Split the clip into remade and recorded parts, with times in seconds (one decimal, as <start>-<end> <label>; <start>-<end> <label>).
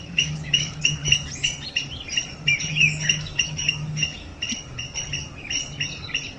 0.0-1.0 remade; 1.0-2.7 recorded; 2.7-4.3 remade; 4.3-6.4 recorded